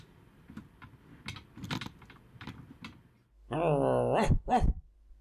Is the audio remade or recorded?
recorded